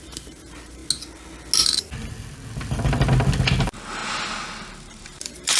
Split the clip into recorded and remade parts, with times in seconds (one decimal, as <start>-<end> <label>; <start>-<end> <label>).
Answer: 0.0-0.8 remade; 0.8-3.6 recorded; 3.6-4.0 remade; 4.0-4.7 recorded; 4.7-5.6 remade